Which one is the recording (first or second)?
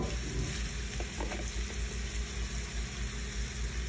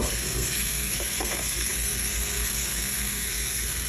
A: first